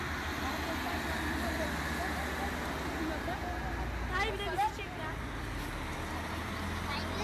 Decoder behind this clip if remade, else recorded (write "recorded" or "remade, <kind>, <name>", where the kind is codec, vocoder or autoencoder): recorded